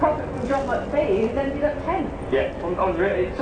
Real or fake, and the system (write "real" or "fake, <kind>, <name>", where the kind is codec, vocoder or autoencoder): real